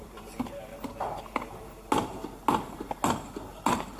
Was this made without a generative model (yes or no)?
yes